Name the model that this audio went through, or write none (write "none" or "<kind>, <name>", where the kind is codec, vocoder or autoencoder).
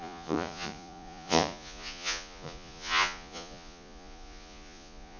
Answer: vocoder, Vocos